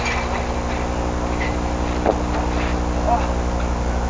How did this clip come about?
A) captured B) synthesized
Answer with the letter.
A